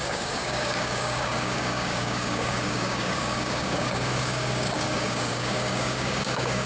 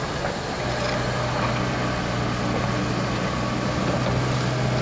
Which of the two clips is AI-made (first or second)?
first